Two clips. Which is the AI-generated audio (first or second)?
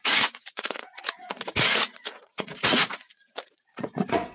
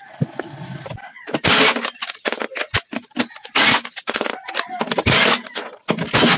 first